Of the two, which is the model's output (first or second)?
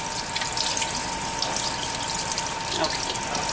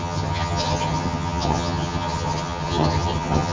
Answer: second